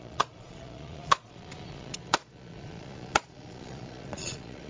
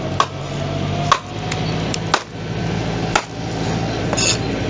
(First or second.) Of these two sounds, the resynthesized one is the first